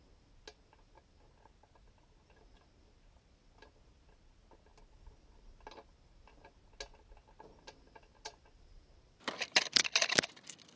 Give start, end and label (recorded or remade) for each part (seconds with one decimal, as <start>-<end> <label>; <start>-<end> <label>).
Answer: 0.0-10.8 recorded